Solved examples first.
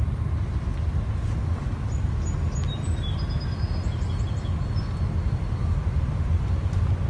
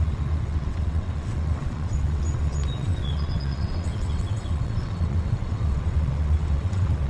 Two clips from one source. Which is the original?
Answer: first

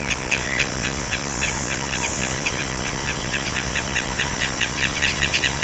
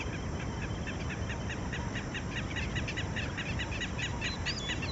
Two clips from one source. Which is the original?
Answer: second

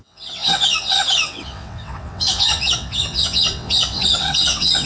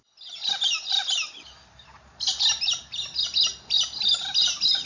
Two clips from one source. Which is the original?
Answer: second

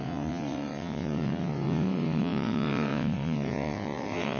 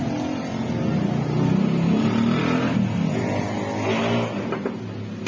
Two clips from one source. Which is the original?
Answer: second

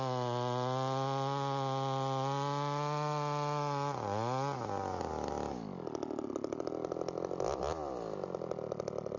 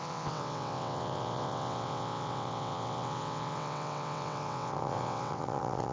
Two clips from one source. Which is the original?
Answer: first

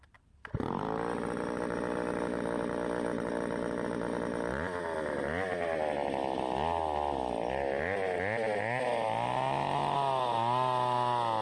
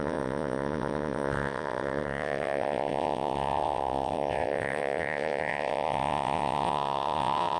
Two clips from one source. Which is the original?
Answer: first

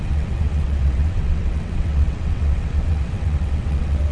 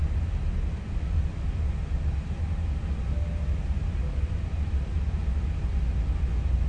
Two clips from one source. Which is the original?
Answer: second